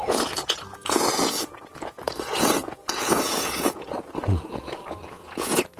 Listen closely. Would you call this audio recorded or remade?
remade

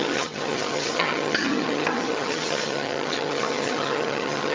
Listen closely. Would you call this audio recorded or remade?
remade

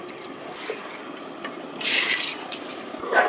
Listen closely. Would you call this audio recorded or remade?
recorded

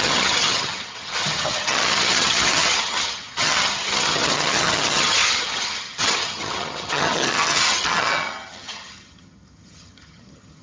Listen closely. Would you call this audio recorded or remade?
remade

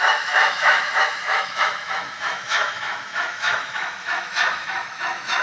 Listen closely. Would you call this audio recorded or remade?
remade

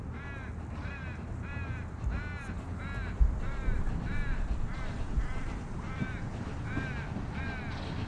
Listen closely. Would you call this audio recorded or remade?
recorded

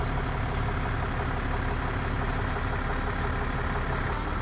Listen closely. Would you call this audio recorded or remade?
recorded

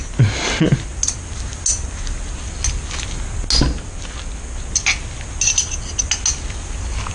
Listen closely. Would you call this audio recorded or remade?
recorded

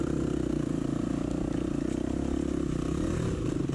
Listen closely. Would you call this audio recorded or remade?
recorded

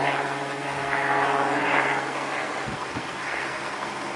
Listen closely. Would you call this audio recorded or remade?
remade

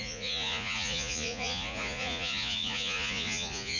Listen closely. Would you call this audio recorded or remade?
remade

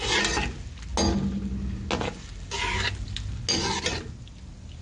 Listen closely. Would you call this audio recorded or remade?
recorded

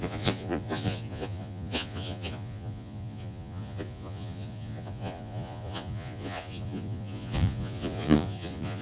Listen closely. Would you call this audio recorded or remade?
remade